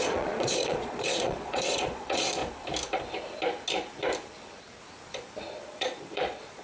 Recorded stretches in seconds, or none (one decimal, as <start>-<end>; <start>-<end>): 2.4-5.6